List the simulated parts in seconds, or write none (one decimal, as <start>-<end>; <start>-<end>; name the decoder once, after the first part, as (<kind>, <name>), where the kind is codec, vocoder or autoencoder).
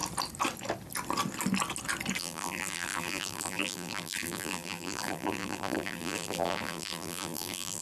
2.2-7.8 (vocoder, BigVGAN v2)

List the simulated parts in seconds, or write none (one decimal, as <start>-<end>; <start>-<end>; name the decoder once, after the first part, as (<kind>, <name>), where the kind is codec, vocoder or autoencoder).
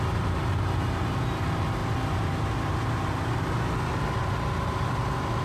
none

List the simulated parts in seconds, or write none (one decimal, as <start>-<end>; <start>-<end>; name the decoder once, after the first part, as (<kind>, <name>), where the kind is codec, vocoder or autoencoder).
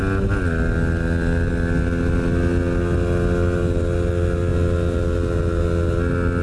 none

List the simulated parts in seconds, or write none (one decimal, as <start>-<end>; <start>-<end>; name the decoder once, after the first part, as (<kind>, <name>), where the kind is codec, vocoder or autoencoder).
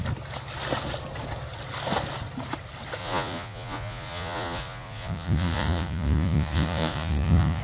3.0-7.6 (vocoder, Vocos)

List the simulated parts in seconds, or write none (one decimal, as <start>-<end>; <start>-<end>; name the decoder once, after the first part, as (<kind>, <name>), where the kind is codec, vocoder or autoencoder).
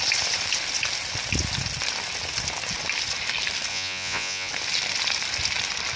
3.7-4.5 (vocoder, Vocos)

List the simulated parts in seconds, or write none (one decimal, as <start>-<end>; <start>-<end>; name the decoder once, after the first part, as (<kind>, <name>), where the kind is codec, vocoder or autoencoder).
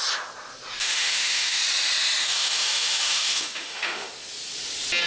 0.8-1.6 (autoencoder, DAC-VAE); 2.2-4.1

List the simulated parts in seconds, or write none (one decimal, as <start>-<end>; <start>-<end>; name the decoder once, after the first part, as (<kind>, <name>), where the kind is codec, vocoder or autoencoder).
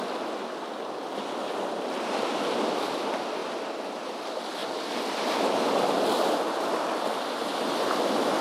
3.4-4.1 (vocoder, BigVGAN v2)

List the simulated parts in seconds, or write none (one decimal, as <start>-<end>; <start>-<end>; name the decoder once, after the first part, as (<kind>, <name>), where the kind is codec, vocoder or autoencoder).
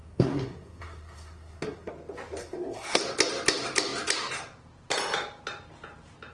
0.0-1.9 (codec, SNAC); 2.4-3.0